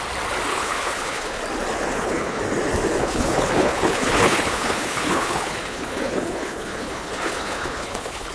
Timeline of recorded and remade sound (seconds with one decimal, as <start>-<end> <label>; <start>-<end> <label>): 0.0-0.5 recorded; 0.5-1.4 remade; 1.4-1.9 recorded; 1.9-2.4 remade; 2.4-3.0 recorded; 3.0-8.3 remade